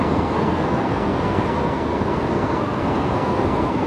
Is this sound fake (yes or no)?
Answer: yes